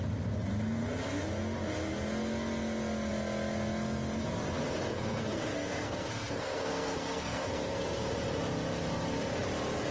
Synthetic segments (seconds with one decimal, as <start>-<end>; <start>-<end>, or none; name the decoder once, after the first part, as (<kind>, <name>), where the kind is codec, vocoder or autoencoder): 4.9-8.1 (codec, SNAC)